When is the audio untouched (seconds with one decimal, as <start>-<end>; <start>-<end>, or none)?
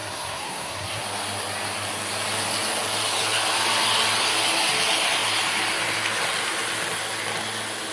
1.0-7.9